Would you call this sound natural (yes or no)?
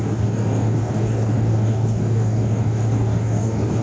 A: no